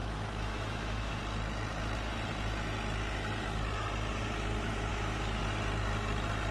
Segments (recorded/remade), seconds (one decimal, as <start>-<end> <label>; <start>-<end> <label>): 0.0-1.2 remade; 1.2-4.9 recorded; 4.9-5.4 remade; 5.4-6.5 recorded